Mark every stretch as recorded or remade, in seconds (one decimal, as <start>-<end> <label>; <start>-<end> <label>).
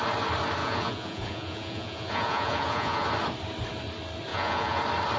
0.0-0.6 recorded; 0.6-3.1 remade; 3.1-4.3 recorded; 4.3-4.8 remade; 4.8-5.2 recorded